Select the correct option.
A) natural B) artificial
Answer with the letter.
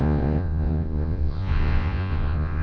B